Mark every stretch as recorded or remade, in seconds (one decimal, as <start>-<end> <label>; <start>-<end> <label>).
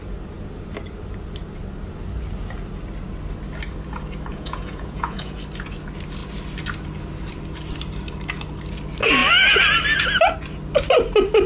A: 0.0-4.3 recorded; 4.3-5.4 remade; 5.4-11.5 recorded